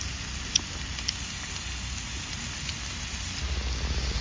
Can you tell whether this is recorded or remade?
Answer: recorded